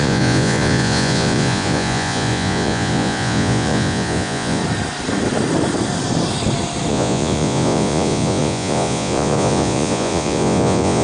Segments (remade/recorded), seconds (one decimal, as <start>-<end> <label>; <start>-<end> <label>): 0.0-4.6 remade; 4.6-6.9 recorded; 6.9-11.0 remade